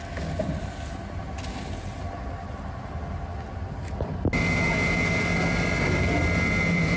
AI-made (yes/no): no